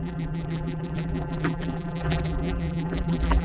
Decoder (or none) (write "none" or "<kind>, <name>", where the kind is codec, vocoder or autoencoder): vocoder, BigVGAN v2